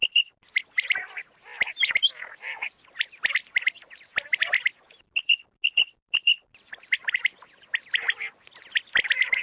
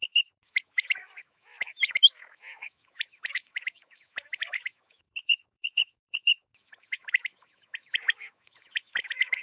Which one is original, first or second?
first